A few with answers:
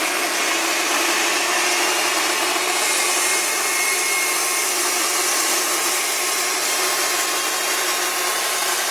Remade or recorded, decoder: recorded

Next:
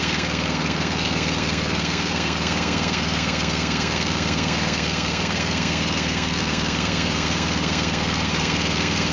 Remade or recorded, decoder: remade, codec, SNAC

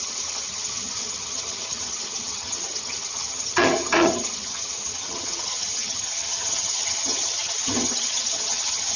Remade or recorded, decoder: remade, vocoder, HiFi-GAN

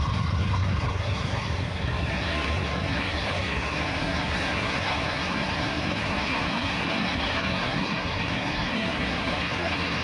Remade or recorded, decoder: remade, codec, SNAC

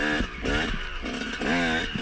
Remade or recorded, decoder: recorded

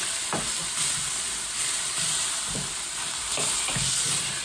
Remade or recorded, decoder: remade, vocoder, BigVGAN v2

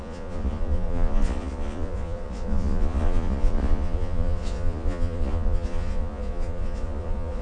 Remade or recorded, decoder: remade, vocoder, Vocos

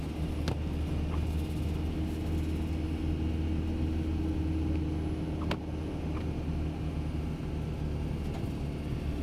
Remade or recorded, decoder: recorded